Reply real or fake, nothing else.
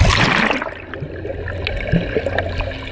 real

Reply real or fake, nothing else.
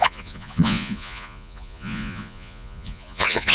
fake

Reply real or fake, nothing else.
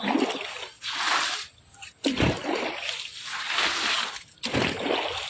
real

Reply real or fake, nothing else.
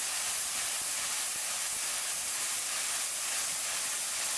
real